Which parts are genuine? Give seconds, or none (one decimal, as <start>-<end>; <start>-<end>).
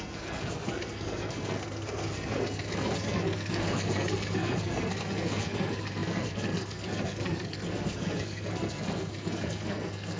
none